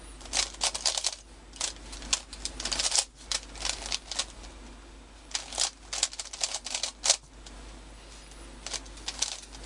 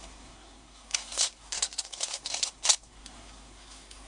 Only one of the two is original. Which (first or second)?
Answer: first